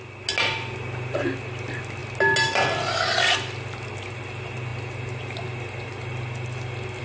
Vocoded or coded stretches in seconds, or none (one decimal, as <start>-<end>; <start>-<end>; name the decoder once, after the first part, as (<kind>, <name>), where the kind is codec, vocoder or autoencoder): none